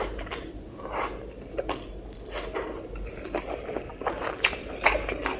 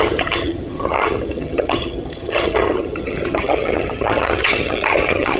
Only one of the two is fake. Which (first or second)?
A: second